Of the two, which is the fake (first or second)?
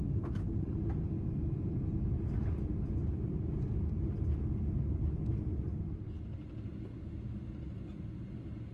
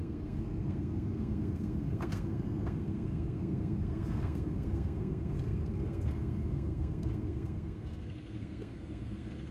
second